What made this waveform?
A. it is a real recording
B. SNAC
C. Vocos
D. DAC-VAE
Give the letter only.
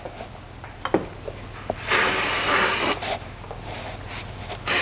A